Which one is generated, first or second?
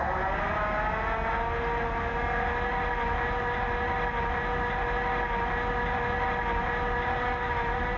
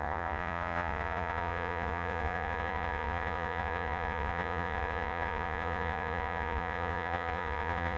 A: second